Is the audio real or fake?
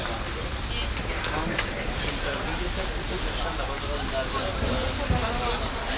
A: real